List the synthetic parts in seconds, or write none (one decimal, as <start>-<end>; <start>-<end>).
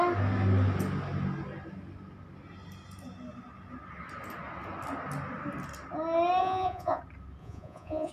6.4-7.0; 7.4-8.1